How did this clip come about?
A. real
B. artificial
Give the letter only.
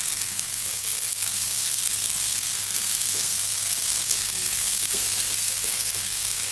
B